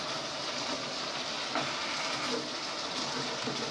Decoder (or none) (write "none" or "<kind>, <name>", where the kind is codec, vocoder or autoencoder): none